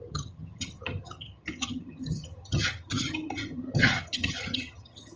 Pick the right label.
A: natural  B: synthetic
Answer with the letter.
B